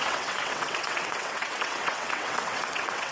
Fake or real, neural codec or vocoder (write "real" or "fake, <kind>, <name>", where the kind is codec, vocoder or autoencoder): fake, vocoder, WaveNeXt